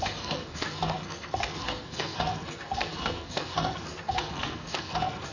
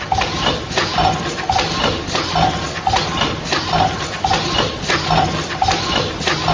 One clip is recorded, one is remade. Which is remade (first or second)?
first